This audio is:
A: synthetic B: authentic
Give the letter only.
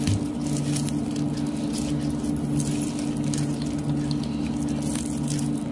B